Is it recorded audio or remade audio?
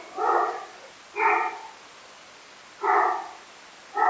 recorded